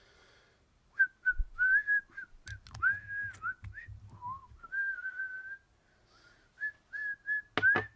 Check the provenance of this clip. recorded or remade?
recorded